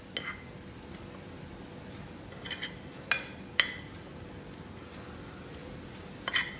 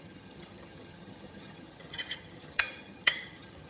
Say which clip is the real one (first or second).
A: first